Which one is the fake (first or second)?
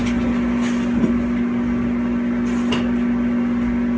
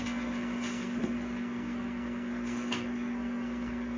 second